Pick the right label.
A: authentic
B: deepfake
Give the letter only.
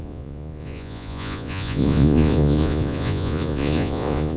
B